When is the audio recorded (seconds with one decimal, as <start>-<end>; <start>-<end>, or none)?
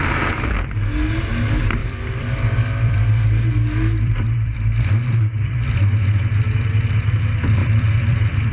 0.0-1.8; 5.7-7.6